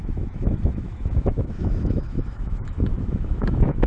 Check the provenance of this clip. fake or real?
fake